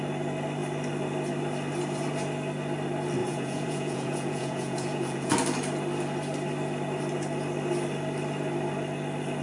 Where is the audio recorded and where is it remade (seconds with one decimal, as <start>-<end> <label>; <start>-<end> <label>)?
0.0-3.2 recorded; 3.2-5.3 remade; 5.3-9.4 recorded